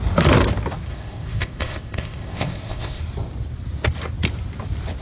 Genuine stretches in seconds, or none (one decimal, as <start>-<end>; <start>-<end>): 0.0-0.9; 3.0-5.0